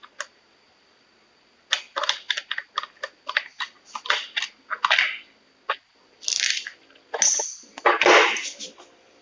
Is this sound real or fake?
real